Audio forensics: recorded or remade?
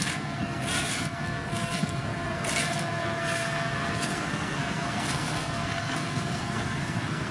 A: remade